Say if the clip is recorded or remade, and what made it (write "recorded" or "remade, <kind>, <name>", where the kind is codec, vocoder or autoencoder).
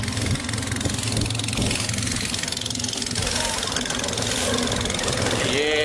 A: recorded